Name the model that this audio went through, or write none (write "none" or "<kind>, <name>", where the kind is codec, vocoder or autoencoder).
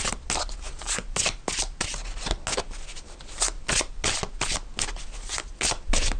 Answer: none